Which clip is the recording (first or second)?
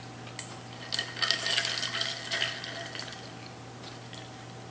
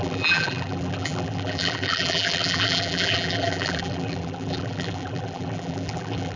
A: first